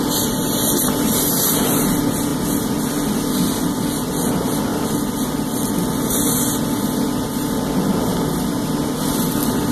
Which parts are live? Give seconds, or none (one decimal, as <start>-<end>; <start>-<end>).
0.0-4.7; 5.7-9.7